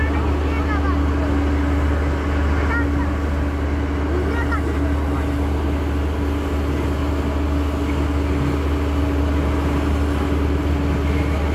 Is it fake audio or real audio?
real